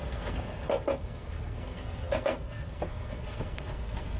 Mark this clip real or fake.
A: fake